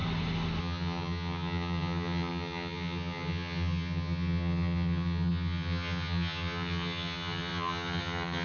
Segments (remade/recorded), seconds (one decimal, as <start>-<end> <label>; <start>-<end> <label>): 0.0-0.6 recorded; 0.6-8.4 remade

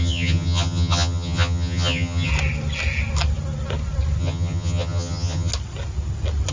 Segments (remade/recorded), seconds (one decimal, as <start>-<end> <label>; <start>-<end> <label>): 0.0-2.3 remade; 2.3-4.2 recorded; 4.2-5.5 remade; 5.5-6.5 recorded

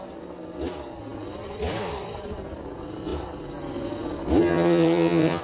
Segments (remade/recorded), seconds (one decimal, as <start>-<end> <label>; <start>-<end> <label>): 0.0-4.4 recorded; 4.4-5.4 remade

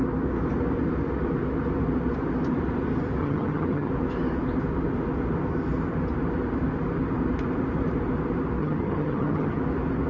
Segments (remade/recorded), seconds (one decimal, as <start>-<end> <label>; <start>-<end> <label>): 0.0-3.2 recorded; 3.2-3.9 remade; 3.9-8.6 recorded; 8.6-9.6 remade; 9.6-10.1 recorded

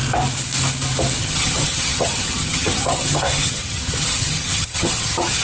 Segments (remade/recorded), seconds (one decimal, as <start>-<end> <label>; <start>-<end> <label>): 0.0-1.2 recorded; 1.2-5.4 remade

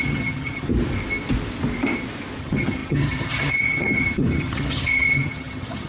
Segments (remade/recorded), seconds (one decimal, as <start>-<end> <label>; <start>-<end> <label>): 0.0-0.7 remade; 0.7-2.4 recorded; 2.4-5.9 remade